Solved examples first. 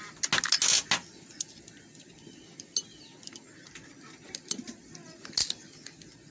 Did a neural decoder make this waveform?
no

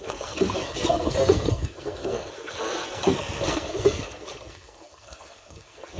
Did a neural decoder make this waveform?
yes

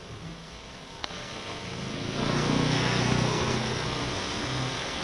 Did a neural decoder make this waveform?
yes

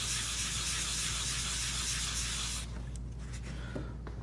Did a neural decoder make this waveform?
no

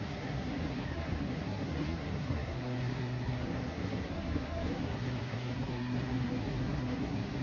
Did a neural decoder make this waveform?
yes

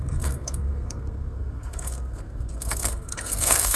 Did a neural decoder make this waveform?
yes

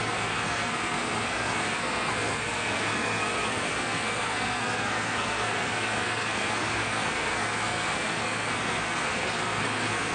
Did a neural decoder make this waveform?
yes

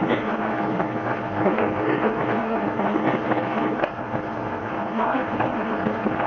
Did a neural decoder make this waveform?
yes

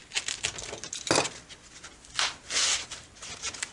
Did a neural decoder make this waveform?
no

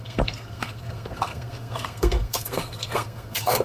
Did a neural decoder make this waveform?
yes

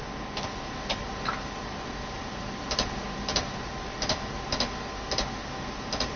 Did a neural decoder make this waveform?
no